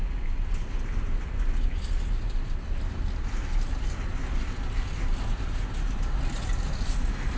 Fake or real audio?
real